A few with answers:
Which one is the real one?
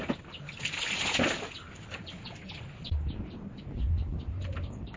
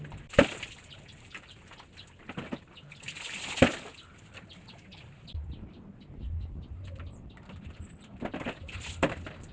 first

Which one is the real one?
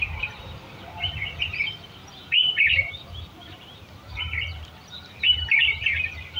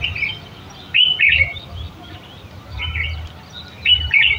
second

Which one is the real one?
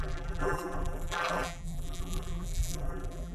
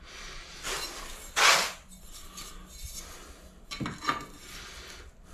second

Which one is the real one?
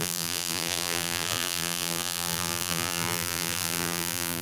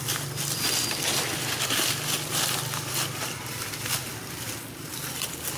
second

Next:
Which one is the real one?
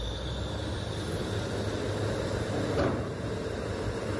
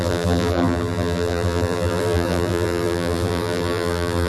first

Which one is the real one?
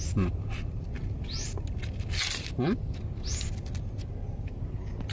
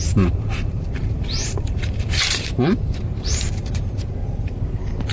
first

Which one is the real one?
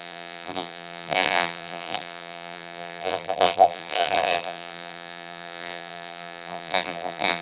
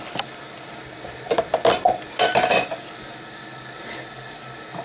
second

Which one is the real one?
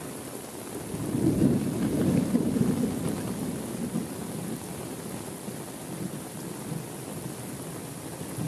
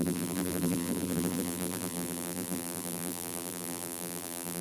first